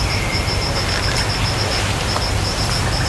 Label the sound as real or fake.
real